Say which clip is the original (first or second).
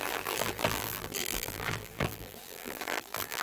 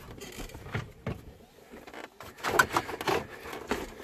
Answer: second